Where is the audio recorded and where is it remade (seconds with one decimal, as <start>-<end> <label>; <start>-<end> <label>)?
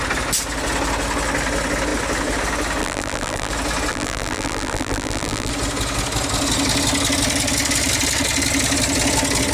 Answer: 0.0-2.8 recorded; 2.8-3.5 remade; 3.5-3.9 recorded; 3.9-5.5 remade; 5.5-9.5 recorded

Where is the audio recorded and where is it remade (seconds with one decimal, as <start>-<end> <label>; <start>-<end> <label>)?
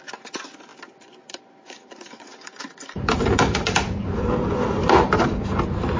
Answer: 0.0-0.7 recorded; 0.7-4.3 remade; 4.3-4.8 recorded; 4.8-5.3 remade; 5.3-6.0 recorded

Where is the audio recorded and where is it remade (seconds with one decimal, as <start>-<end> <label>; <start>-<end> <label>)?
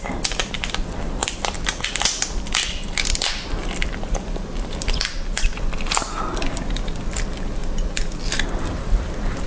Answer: 0.0-1.2 recorded; 1.2-5.0 remade; 5.0-9.5 recorded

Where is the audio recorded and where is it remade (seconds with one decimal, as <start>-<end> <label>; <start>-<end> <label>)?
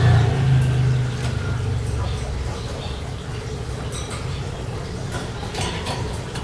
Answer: 0.0-5.4 recorded; 5.4-6.4 remade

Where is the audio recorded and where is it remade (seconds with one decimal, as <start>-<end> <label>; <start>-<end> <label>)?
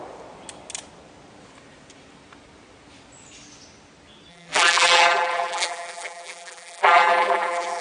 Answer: 0.0-4.3 recorded; 4.3-7.8 remade